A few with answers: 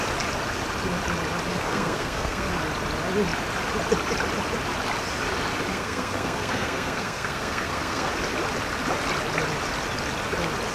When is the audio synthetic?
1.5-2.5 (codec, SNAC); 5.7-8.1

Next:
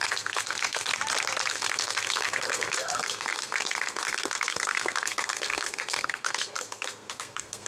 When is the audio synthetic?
0.0-0.9 (codec, SNAC); 1.5-7.7

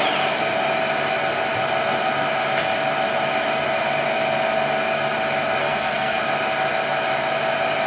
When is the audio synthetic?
5.6-6.2 (codec, SNAC)

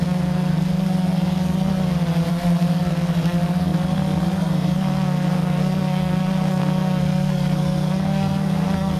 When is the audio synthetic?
0.0-1.8 (codec, SNAC); 2.3-9.0